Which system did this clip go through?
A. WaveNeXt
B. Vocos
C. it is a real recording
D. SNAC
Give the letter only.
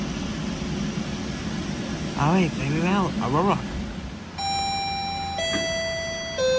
C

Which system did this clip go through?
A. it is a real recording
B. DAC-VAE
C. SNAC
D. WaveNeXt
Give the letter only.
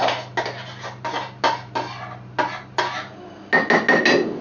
A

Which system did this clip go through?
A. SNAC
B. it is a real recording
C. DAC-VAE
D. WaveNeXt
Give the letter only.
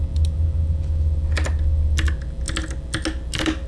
B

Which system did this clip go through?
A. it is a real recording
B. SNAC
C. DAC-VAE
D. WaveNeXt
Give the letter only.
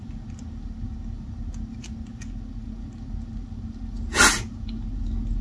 A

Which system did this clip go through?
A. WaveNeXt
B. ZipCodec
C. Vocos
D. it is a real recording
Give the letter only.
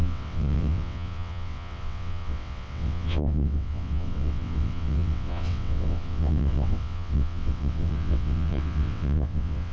A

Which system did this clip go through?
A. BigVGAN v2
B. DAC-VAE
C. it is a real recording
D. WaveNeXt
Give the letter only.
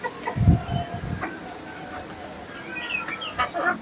C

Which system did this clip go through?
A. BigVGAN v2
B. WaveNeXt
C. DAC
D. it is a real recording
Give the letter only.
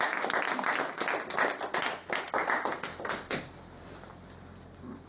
D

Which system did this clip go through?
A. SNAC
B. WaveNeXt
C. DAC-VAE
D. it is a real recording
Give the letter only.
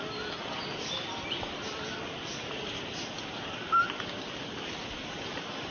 D